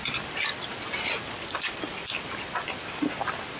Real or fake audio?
real